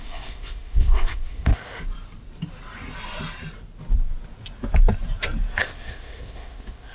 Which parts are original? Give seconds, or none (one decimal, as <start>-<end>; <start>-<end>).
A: 1.8-5.6